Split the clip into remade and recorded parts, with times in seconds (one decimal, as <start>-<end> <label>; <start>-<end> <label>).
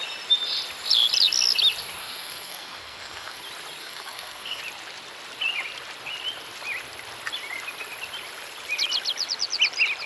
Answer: 0.0-2.0 recorded; 2.0-3.4 remade; 3.4-3.8 recorded; 3.8-4.6 remade; 4.6-10.1 recorded